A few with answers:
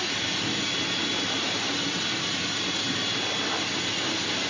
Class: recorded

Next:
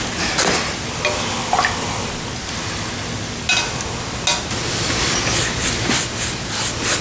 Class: recorded